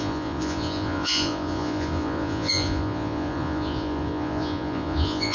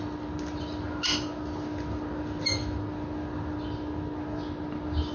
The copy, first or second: first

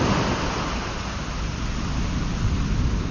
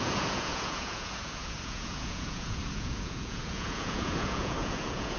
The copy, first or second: second